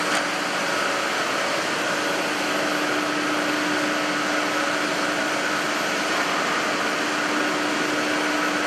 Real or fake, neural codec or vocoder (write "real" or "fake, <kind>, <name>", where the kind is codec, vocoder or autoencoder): real